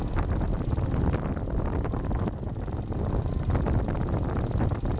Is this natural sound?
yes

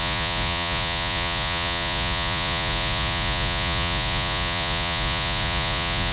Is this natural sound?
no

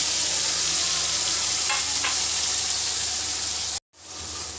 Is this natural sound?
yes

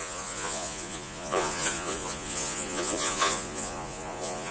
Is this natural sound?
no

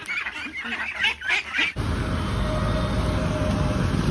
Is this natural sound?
yes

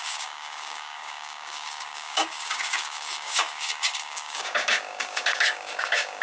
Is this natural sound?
no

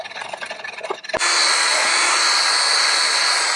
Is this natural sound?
yes